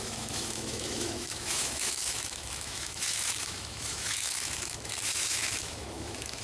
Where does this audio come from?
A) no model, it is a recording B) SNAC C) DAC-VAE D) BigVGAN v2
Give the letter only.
C